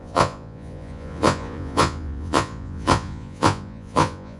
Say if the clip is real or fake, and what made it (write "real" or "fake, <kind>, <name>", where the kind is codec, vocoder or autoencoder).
fake, vocoder, Vocos